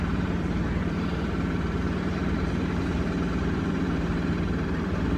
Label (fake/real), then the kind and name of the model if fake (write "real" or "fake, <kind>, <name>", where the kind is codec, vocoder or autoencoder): fake, vocoder, BigVGAN v2